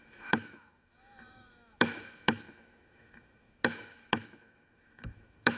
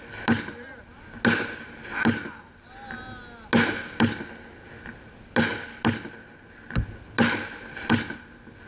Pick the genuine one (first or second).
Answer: second